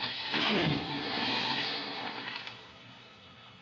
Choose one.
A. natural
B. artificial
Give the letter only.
B